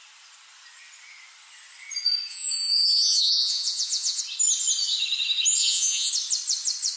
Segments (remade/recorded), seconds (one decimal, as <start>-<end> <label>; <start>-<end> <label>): 0.0-2.3 recorded; 2.3-4.2 remade; 4.2-5.6 recorded; 5.6-6.1 remade; 6.1-7.0 recorded